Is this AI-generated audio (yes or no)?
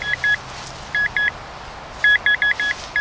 no